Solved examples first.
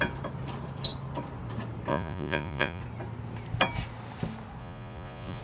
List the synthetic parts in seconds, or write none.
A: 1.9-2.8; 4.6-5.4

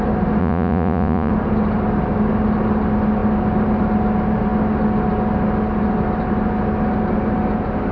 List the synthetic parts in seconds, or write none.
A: 0.4-1.3

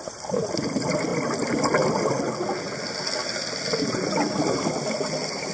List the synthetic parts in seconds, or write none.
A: none

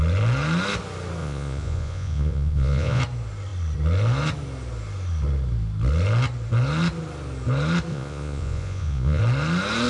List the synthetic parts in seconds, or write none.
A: 1.2-3.0; 7.9-9.2